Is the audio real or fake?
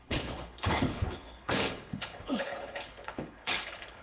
fake